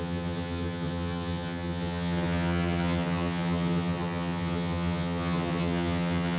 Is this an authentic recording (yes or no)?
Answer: no